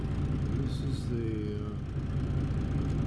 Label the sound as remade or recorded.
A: recorded